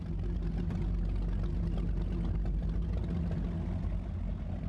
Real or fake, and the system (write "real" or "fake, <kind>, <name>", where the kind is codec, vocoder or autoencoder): real